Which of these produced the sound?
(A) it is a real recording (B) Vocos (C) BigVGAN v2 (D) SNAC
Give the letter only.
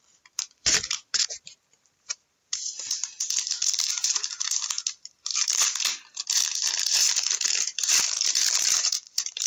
C